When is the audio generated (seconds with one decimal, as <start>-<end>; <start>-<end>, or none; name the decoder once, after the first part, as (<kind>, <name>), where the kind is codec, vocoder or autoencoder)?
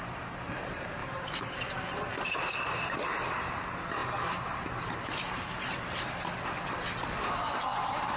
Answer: 1.0-3.6 (vocoder, BigVGAN v2); 4.0-6.2